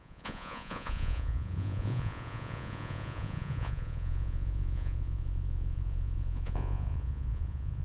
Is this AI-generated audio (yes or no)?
yes